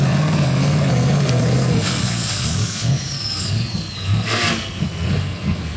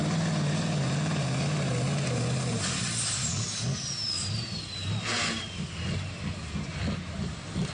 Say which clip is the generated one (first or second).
first